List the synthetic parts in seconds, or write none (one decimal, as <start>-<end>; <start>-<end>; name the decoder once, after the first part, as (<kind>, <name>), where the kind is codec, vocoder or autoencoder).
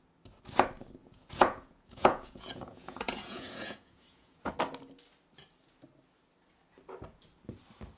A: 1.0-4.5 (vocoder, Vocos)